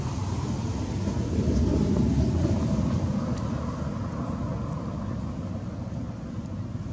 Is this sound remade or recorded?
recorded